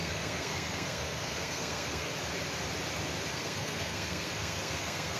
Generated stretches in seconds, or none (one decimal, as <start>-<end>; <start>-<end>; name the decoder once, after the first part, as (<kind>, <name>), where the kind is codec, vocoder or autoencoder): 0.0-2.1 (codec, SNAC); 3.3-5.2